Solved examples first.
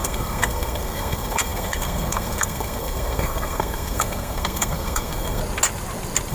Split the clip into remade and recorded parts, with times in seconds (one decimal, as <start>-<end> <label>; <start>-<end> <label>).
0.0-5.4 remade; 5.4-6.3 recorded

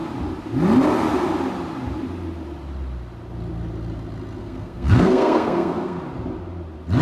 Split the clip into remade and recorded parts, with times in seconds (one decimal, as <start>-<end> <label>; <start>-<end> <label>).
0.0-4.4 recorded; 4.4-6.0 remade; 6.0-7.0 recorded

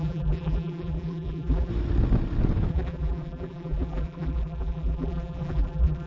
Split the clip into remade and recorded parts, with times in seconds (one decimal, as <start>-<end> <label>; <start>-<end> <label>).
0.0-1.7 remade; 1.7-2.7 recorded; 2.7-6.1 remade

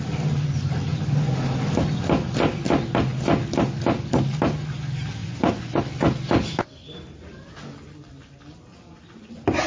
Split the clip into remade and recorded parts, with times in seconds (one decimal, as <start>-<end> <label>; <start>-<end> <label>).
0.0-5.2 recorded; 5.2-5.8 remade; 5.8-9.7 recorded